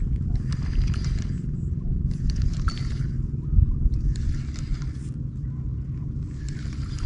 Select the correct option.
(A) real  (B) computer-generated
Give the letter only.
A